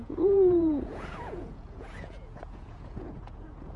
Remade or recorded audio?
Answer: remade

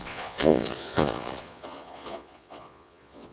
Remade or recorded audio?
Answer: remade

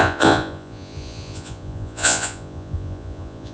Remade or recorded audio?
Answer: remade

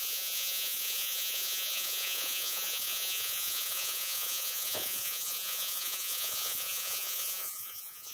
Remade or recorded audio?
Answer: remade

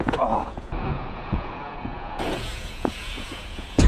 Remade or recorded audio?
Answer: remade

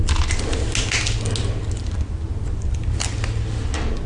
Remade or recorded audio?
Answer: recorded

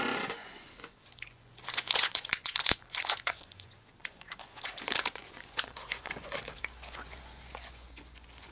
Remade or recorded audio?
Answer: remade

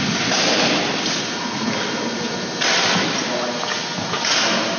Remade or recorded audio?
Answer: recorded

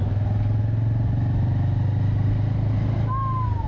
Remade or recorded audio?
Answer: recorded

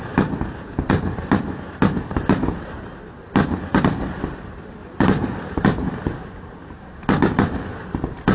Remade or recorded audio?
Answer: recorded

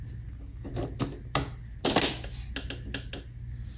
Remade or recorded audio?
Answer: recorded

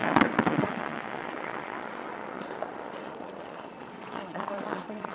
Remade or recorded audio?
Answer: remade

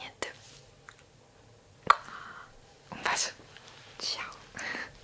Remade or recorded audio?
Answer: recorded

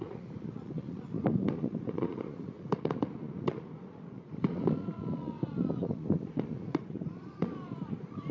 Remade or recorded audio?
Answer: remade